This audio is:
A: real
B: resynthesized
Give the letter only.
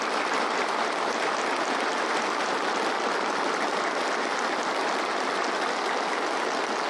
A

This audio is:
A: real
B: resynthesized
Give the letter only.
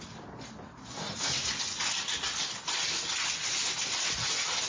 A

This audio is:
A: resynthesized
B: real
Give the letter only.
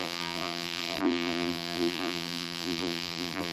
A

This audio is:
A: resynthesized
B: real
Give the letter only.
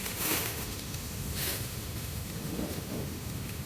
A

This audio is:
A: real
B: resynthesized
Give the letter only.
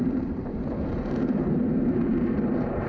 B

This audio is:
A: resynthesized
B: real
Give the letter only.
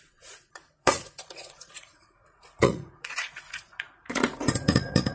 A